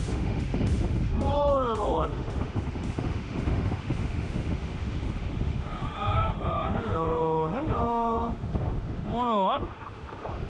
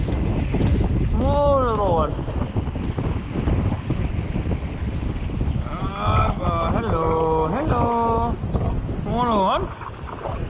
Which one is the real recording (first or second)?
second